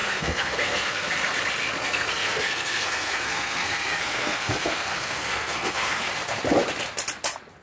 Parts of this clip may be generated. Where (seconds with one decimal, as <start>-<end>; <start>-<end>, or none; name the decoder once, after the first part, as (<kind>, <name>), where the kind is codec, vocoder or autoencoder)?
0.0-1.1 (codec, SNAC); 1.8-6.1